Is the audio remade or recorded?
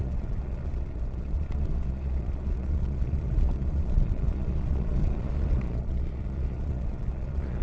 remade